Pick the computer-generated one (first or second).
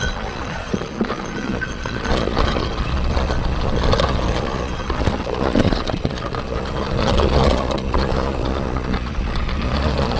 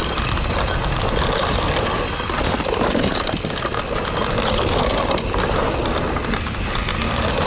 first